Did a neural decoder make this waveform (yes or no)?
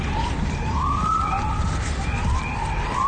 no